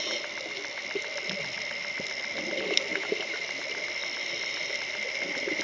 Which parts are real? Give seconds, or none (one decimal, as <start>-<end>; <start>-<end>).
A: 0.0-2.9; 3.6-5.6

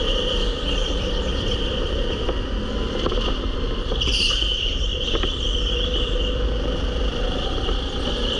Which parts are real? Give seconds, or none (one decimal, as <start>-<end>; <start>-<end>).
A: none

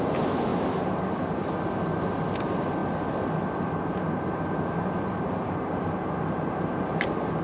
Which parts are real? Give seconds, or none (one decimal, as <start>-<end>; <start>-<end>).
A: 0.0-7.4

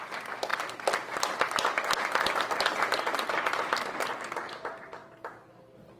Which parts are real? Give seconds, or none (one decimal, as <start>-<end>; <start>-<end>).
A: 0.0-6.0